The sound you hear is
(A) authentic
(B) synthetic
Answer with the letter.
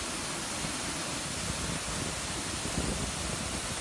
A